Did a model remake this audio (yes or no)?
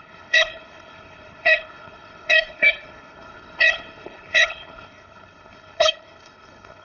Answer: yes